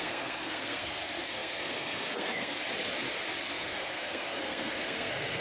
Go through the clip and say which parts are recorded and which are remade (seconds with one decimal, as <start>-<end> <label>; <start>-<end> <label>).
0.0-2.6 remade; 2.6-3.5 recorded; 3.5-5.4 remade